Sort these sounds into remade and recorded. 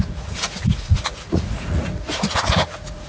remade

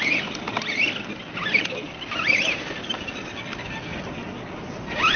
recorded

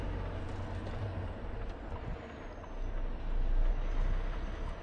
recorded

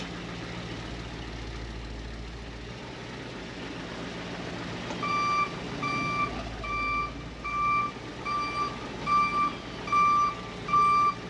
recorded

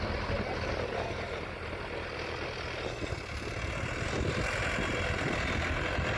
recorded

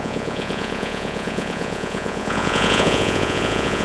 remade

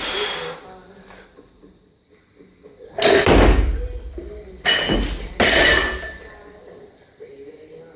recorded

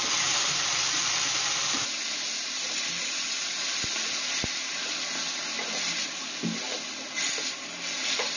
recorded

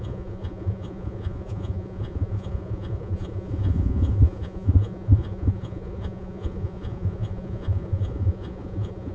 remade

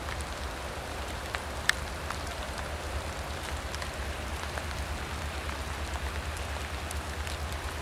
recorded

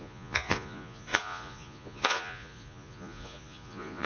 remade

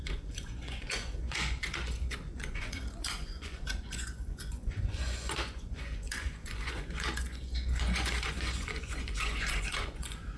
remade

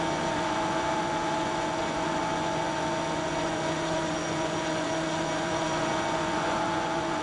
remade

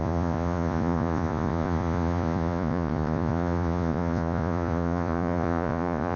remade